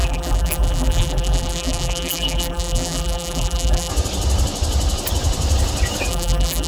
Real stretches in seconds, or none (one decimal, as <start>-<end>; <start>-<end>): 3.9-6.1